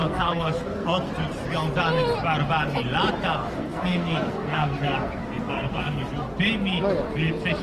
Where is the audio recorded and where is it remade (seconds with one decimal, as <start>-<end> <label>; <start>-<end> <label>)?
0.0-1.1 remade; 1.1-3.4 recorded; 3.4-6.0 remade; 6.0-7.6 recorded